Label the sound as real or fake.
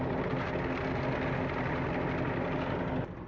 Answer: real